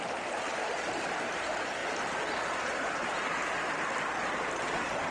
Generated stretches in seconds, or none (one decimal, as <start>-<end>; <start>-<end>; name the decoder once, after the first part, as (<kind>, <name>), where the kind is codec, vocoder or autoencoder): none